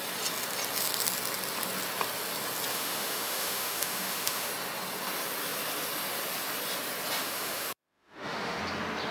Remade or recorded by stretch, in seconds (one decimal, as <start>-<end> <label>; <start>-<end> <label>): 0.0-2.7 recorded; 2.7-4.5 remade; 4.5-7.2 recorded; 7.2-8.6 remade; 8.6-9.1 recorded